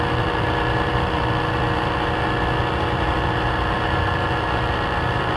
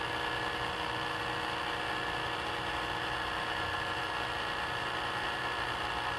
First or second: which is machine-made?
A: first